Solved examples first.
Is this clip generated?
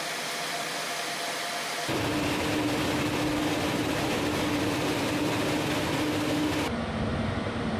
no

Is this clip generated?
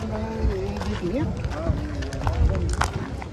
no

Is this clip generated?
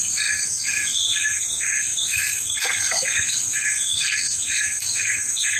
yes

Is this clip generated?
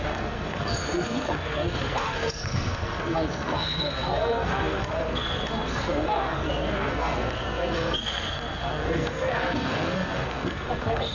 yes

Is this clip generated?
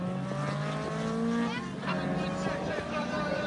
no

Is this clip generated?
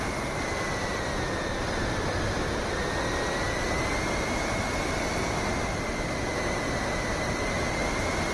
no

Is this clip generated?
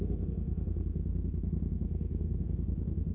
yes